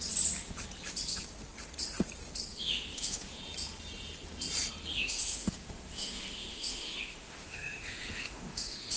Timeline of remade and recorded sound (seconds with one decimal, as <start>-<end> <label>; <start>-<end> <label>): 0.0-2.5 recorded; 2.5-3.4 remade; 3.4-4.9 recorded; 4.9-9.0 remade